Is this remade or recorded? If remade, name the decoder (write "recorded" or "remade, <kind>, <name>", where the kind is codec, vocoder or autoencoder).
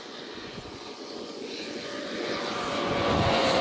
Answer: remade, vocoder, Vocos